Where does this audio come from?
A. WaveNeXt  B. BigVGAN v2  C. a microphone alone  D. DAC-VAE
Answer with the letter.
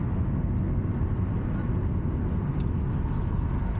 C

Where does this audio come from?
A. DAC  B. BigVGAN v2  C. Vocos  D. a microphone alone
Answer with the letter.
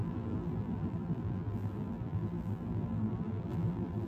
B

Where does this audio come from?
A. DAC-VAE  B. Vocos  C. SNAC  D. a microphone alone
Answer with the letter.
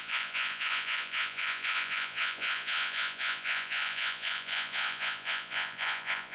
B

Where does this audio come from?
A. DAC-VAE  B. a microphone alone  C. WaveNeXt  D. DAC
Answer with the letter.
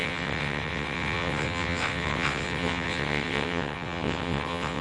C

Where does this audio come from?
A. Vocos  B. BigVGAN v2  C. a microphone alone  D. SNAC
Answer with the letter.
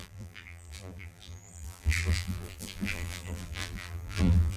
B